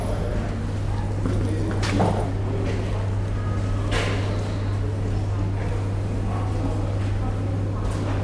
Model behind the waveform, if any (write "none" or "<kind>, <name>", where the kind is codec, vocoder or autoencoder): none